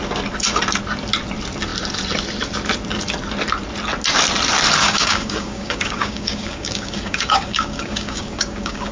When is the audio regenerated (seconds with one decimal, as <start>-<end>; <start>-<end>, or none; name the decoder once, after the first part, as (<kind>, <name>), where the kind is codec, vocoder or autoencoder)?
4.8-8.9 (codec, DAC)